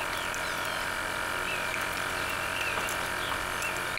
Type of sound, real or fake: real